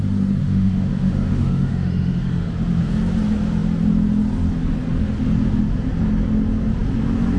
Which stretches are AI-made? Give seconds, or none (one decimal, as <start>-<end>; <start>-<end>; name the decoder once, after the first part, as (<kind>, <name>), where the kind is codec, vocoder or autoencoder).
0.4-2.5 (autoencoder, DAC-VAE)